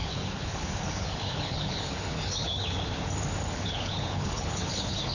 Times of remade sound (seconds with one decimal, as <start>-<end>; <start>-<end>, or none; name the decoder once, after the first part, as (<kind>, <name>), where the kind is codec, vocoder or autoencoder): 0.0-2.8 (codec, HILCodec); 3.5-5.1